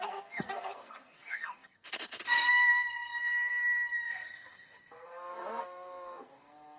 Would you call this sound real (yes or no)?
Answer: no